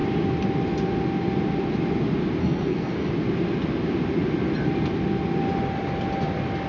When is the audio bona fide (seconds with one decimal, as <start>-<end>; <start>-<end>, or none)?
0.0-2.4; 3.1-6.7